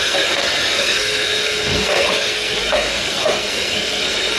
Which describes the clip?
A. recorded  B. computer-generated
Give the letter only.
B